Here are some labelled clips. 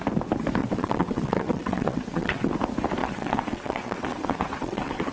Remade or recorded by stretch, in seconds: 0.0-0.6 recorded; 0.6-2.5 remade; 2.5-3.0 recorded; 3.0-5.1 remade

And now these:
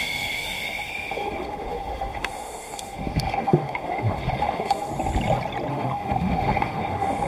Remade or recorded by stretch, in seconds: 0.0-4.9 remade; 4.9-5.7 recorded; 5.7-7.3 remade

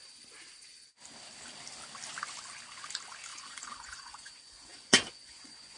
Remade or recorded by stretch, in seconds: 0.0-3.3 recorded; 3.3-5.8 remade

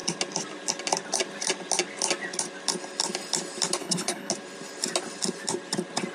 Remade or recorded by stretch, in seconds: 0.0-3.8 recorded; 3.8-4.3 remade; 4.3-6.1 recorded